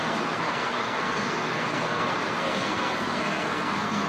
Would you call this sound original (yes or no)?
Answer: no